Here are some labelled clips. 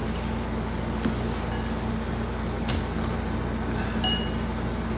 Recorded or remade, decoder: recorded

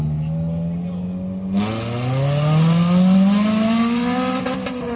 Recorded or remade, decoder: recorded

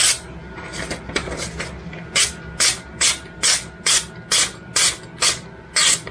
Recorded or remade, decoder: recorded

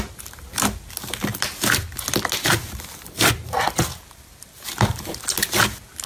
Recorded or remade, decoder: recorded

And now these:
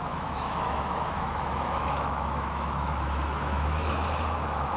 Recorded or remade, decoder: remade, autoencoder, DAC-VAE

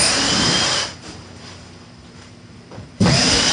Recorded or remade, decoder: remade, vocoder, BigVGAN v2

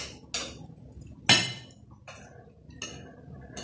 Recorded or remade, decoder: recorded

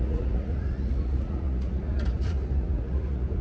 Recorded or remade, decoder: remade, vocoder, Vocos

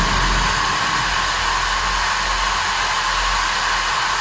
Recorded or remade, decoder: recorded